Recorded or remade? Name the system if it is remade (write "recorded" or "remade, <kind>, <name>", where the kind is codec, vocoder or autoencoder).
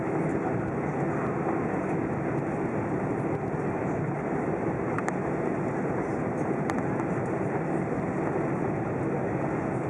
recorded